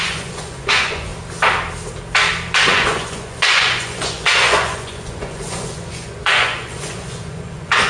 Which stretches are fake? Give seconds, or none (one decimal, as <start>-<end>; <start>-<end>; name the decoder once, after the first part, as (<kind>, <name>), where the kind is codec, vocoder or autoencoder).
0.0-1.1 (vocoder, Vocos); 2.6-7.9